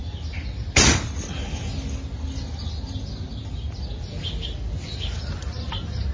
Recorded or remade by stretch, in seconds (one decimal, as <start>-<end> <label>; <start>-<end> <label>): 0.0-6.1 recorded